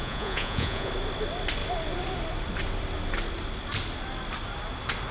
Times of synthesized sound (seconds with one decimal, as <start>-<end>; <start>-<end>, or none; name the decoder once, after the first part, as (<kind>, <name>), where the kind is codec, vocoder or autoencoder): 0.0-0.9 (vocoder, Vocos)